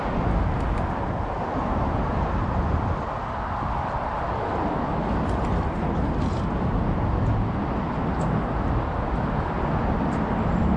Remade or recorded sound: recorded